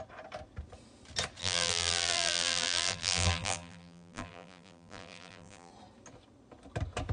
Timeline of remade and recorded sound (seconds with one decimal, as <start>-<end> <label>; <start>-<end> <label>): 0.0-1.4 recorded; 1.4-5.7 remade; 5.7-7.1 recorded